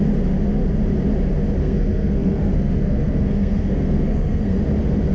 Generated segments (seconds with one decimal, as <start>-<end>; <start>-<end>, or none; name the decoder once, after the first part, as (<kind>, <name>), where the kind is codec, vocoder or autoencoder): 1.6-4.6 (codec, SNAC)